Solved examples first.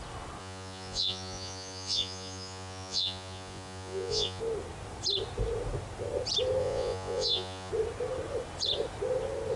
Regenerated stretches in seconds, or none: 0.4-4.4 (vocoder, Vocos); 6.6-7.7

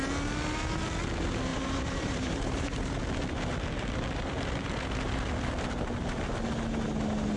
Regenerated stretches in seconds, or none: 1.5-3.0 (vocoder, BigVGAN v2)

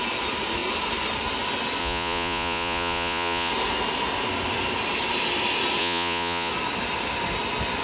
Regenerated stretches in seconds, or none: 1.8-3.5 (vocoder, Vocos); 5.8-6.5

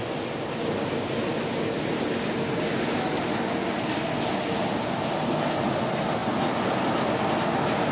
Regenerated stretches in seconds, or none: 6.2-7.0 (vocoder, BigVGAN v2)